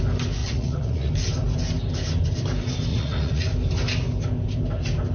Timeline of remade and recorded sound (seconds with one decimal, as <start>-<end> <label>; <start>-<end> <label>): 0.0-0.4 recorded; 0.4-1.1 remade; 1.1-2.9 recorded; 2.9-3.4 remade; 3.4-5.1 recorded